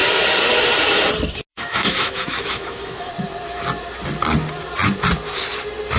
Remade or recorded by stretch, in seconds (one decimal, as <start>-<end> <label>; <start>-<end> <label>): 0.0-1.5 recorded; 1.5-3.1 remade; 3.1-6.0 recorded